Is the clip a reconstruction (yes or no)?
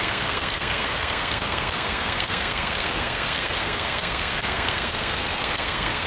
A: yes